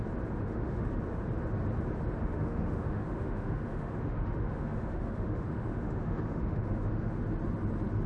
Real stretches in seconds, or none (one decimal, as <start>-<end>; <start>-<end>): 0.0-0.4; 1.0-2.2; 7.1-8.1